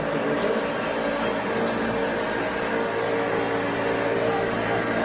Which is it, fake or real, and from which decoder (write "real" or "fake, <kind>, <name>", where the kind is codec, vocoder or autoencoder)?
real